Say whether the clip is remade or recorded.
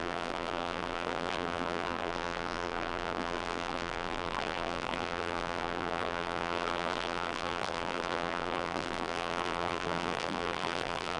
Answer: remade